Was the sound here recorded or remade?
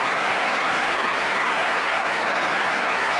remade